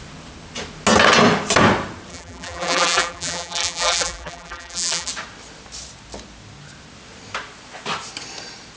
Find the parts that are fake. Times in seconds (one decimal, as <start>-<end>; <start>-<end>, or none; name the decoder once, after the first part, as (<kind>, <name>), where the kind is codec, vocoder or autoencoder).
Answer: 2.1-5.1 (vocoder, BigVGAN v2)